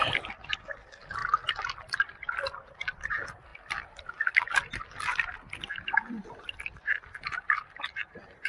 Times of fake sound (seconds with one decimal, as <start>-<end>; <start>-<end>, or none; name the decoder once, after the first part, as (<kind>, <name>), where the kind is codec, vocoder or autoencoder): none